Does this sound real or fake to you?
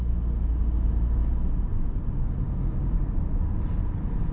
real